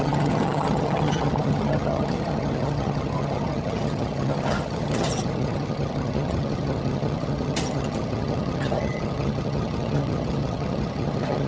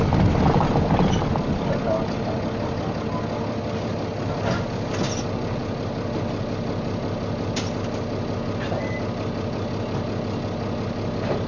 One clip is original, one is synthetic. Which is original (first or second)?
second